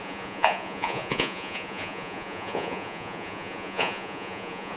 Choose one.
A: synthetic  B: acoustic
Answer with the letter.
A